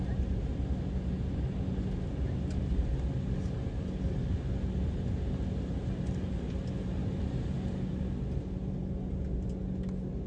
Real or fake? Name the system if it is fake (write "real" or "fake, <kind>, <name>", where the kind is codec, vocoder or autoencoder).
real